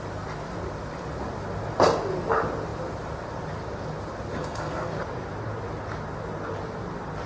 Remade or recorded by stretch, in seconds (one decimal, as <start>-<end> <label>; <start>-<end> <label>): 0.0-4.4 recorded; 4.4-4.9 remade; 4.9-7.3 recorded